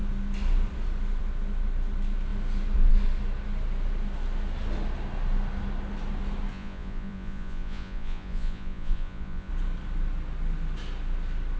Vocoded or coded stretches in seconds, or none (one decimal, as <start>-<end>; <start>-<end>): 6.5-9.5